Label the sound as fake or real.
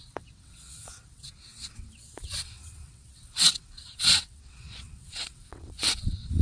fake